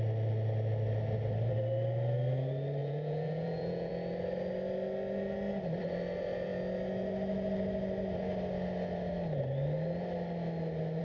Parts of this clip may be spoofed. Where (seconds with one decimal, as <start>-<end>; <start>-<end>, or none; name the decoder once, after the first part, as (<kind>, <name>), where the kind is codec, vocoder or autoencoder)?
2.8-3.9 (vocoder, Vocos)